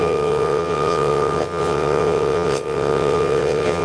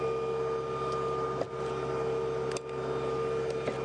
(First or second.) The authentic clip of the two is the second